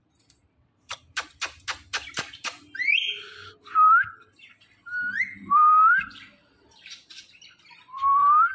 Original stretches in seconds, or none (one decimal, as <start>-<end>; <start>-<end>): none